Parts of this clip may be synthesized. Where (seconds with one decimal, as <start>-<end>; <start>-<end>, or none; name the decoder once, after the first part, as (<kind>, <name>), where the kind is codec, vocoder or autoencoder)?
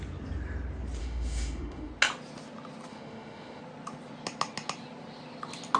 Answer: 1.0-1.9 (autoencoder, DAC-VAE); 2.9-3.6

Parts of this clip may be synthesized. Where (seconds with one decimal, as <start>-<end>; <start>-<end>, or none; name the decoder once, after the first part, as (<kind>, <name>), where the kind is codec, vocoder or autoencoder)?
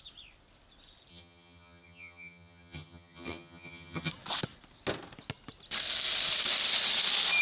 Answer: 1.1-4.1 (vocoder, HiFi-GAN)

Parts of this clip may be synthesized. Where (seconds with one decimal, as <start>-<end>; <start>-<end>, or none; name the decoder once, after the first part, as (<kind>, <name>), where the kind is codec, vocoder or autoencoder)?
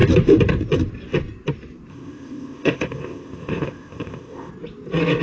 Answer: 1.9-4.5 (codec, ZipCodec)